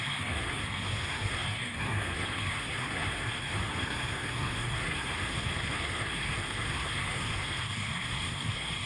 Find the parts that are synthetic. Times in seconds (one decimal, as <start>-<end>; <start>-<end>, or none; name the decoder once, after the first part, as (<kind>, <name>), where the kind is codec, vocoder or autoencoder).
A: 0.0-8.9 (codec, SNAC)